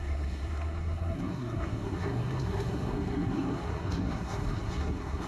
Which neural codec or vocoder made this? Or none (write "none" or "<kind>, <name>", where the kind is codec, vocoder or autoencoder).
codec, SNAC